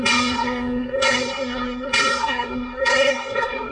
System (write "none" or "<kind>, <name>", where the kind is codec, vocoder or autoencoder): codec, SNAC